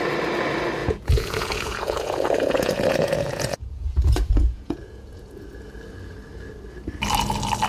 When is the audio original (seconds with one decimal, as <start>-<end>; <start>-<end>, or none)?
0.0-0.8; 5.4-7.7